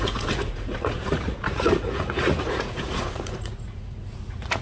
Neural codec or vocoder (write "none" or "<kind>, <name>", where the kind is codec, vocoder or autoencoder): vocoder, Vocos